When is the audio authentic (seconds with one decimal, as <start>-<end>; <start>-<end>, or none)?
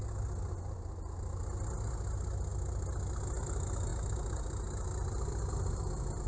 0.0-6.3